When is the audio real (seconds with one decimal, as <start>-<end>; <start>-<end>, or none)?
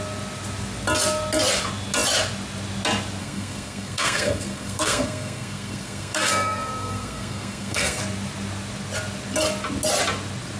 0.0-3.2; 8.0-10.6